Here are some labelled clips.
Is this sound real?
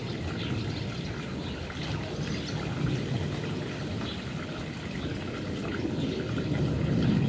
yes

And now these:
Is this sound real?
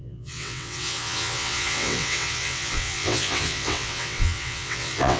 no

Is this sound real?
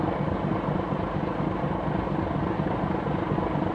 yes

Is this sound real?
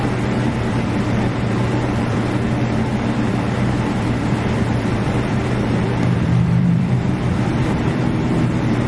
no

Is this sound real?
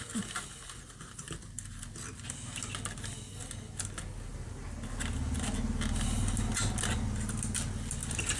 yes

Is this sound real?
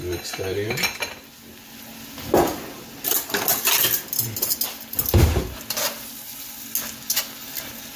yes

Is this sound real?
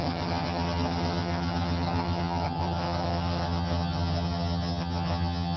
no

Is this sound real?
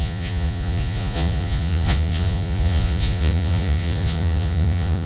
no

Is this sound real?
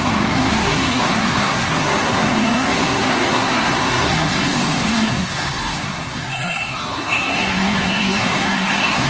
no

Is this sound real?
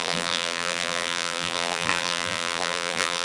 no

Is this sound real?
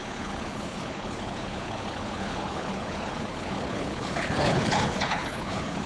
no